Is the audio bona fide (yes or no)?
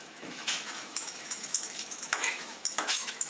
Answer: no